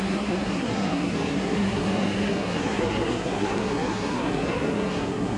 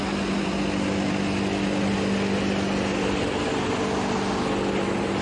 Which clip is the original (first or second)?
second